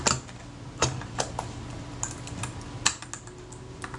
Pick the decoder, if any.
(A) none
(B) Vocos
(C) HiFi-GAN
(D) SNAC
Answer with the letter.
A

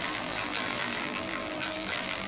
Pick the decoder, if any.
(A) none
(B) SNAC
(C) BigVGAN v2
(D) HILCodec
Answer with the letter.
C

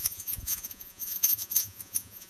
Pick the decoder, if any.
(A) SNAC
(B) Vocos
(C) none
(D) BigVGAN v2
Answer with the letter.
B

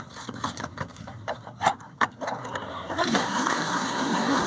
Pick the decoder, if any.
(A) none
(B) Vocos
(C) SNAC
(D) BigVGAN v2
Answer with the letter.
C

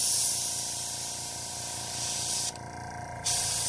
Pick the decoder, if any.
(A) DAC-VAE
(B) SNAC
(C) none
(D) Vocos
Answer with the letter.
C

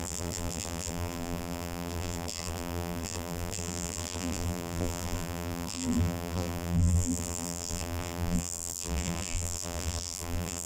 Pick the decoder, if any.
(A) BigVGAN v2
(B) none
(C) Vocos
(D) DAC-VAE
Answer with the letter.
A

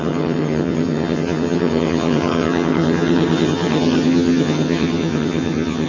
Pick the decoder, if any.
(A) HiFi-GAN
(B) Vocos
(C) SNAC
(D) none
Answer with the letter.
A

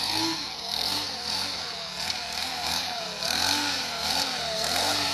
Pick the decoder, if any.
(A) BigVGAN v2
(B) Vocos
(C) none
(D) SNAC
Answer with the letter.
D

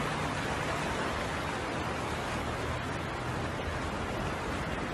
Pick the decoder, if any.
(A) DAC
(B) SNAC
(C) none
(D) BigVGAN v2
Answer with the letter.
C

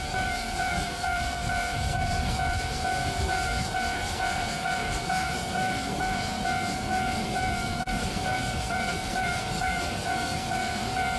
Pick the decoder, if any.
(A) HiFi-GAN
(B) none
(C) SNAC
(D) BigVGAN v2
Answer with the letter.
C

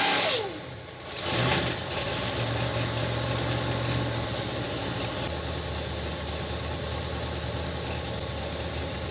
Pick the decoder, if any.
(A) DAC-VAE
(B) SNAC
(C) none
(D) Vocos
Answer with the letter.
C